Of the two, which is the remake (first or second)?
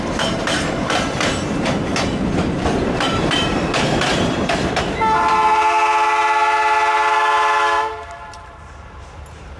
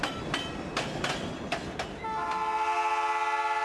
first